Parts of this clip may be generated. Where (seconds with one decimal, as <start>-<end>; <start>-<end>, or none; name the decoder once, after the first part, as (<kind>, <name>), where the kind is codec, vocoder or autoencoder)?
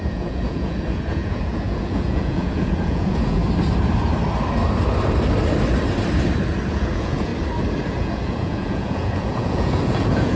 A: 0.0-3.4 (vocoder, Vocos); 6.7-7.3; 7.9-10.4